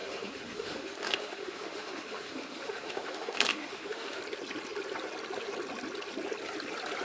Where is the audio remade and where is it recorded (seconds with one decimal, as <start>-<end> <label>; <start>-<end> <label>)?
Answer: 0.0-4.2 remade; 4.2-7.0 recorded